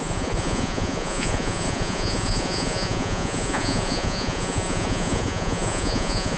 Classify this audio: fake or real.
fake